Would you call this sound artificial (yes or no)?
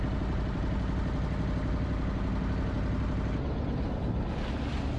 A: no